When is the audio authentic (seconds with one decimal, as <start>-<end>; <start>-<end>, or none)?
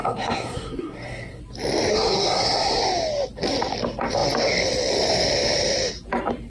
1.4-1.9; 2.8-6.5